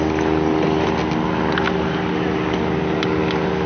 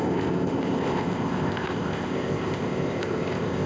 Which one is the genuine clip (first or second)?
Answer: first